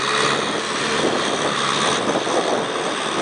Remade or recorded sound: recorded